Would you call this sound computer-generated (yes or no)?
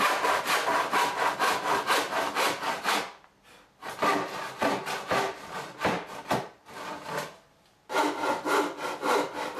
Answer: no